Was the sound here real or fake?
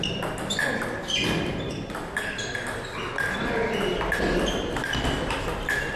real